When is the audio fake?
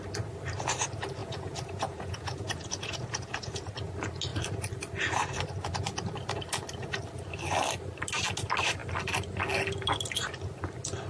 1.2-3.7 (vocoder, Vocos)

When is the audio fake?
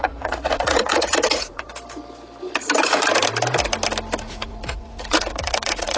0.0-1.7 (vocoder, Vocos); 4.2-6.0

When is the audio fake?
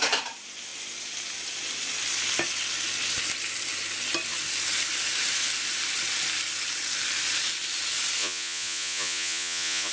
8.2-9.9 (vocoder, Vocos)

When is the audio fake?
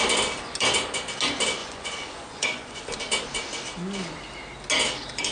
1.6-2.8 (vocoder, Vocos)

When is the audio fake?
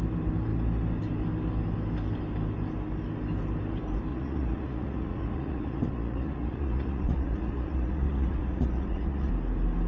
4.1-9.3 (vocoder, Vocos)